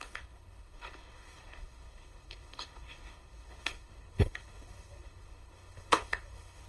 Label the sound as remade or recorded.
remade